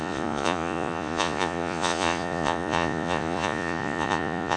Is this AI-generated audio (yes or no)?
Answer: yes